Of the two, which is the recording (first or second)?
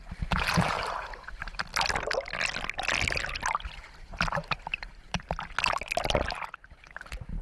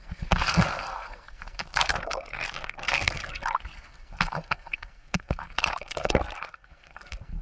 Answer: first